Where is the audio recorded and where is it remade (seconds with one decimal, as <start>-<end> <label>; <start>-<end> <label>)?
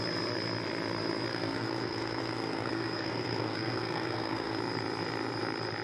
0.0-1.3 recorded; 1.3-4.6 remade; 4.6-5.8 recorded